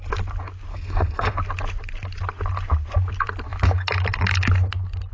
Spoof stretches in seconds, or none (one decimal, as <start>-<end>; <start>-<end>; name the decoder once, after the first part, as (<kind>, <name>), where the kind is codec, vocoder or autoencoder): 0.7-1.3 (codec, SNAC)